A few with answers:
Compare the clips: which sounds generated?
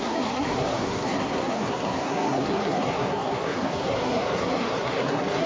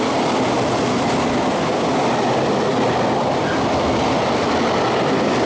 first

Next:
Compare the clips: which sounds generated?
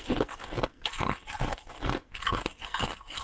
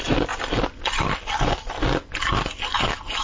first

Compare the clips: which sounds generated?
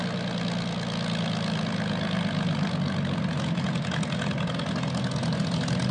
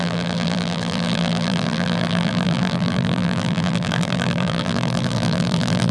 second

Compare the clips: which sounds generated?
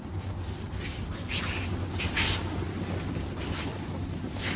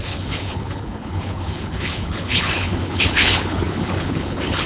second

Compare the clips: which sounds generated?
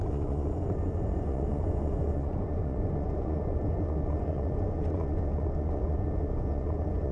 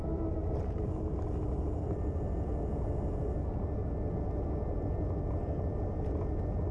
first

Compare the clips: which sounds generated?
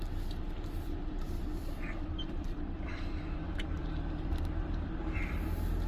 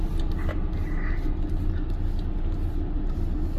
first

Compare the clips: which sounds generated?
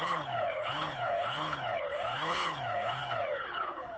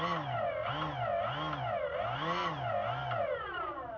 first